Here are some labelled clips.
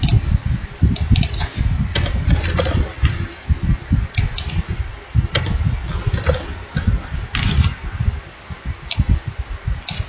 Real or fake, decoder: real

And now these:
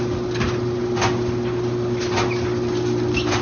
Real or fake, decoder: real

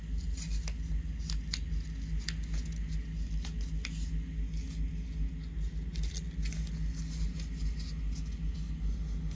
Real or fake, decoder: real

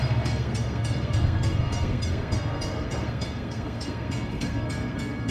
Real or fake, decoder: fake, codec, SNAC